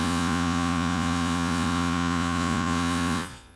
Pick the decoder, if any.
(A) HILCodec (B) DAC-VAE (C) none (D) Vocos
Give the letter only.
D